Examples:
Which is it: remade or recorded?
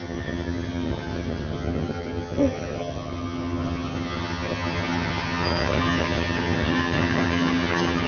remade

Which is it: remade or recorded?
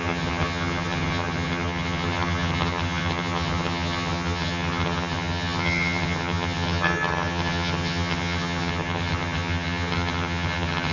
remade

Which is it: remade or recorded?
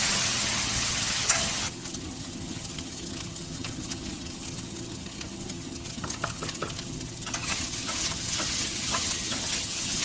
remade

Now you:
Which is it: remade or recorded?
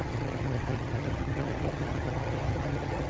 remade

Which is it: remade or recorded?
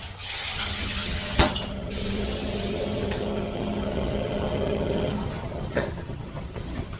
remade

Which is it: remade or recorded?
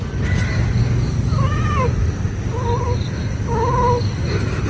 recorded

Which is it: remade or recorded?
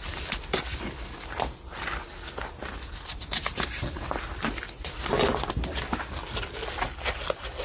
recorded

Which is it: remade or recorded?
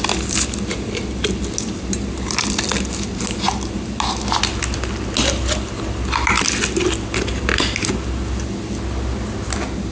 recorded